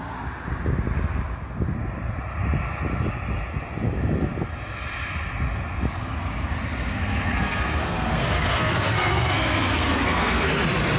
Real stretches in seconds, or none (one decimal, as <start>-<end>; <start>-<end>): 0.0-7.0; 10.6-11.0